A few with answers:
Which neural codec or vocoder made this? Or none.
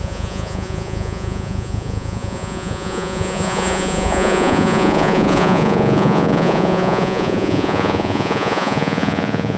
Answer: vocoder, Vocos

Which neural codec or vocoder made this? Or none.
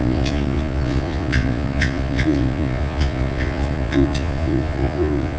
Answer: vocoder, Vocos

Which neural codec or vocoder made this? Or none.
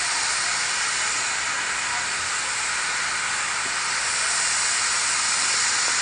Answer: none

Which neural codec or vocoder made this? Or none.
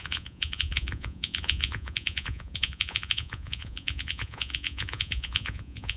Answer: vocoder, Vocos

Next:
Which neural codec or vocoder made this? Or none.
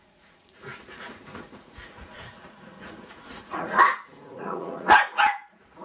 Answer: vocoder, Vocos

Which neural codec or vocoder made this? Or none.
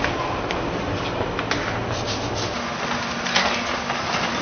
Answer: none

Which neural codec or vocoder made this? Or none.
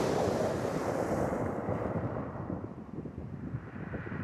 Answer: none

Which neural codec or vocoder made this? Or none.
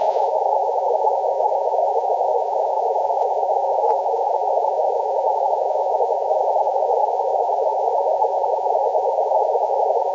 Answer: vocoder, Vocos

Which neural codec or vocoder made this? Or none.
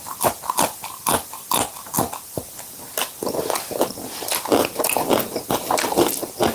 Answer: none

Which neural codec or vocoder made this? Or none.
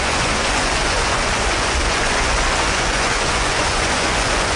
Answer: vocoder, Vocos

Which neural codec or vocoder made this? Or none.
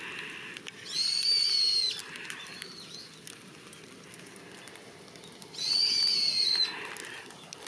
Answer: none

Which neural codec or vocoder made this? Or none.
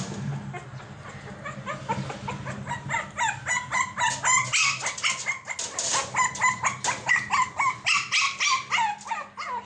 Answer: none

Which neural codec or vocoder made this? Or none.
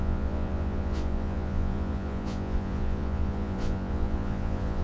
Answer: vocoder, Vocos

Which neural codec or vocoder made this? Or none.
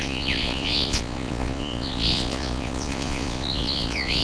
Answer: vocoder, Vocos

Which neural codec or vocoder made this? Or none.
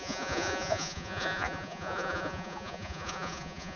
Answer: vocoder, Vocos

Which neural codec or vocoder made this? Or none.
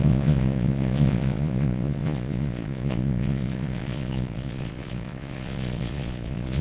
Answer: vocoder, Vocos